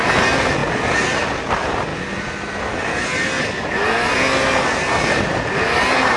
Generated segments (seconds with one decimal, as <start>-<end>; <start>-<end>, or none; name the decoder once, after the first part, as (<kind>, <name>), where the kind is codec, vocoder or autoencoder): none